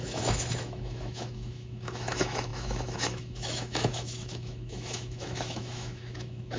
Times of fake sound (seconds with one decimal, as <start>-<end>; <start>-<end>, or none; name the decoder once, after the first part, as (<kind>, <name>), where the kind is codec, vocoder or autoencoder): 0.0-6.6 (autoencoder, DAC-VAE)

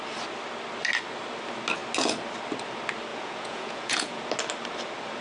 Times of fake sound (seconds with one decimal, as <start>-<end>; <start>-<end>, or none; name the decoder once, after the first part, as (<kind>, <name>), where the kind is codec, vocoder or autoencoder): 3.1-4.2 (vocoder, Vocos)

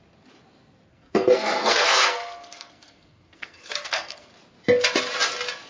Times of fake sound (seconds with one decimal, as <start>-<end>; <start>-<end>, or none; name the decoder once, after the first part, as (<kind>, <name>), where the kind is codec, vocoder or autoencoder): 0.9-4.3 (codec, SNAC)

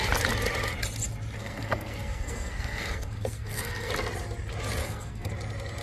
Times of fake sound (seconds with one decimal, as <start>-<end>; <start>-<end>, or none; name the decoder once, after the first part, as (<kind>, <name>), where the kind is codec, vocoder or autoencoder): 1.4-3.9 (codec, SNAC); 4.8-5.3

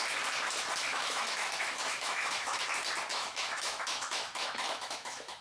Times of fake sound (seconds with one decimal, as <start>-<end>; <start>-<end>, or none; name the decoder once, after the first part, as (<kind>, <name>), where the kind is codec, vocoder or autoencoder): 0.9-2.6 (autoencoder, DAC-VAE); 3.1-5.4

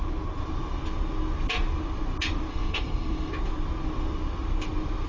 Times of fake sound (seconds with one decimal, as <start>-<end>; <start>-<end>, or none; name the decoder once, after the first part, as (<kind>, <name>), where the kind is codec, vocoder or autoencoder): 2.5-3.3 (codec, SNAC)